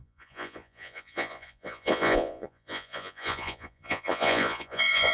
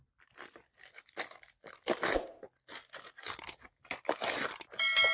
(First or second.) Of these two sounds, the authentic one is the second